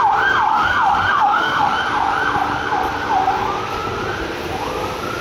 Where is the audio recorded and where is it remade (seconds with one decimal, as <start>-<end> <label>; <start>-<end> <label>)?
0.0-0.5 recorded; 0.5-1.7 remade; 1.7-5.2 recorded